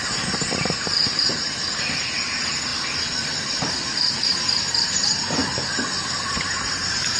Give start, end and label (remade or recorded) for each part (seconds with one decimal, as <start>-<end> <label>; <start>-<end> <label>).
0.0-2.7 remade; 2.7-3.6 recorded; 3.6-5.4 remade; 5.4-6.3 recorded; 6.3-7.2 remade